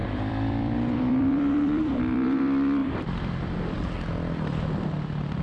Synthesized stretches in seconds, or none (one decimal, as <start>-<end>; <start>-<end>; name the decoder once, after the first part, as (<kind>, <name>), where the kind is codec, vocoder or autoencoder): 0.0-5.4 (vocoder, BigVGAN v2)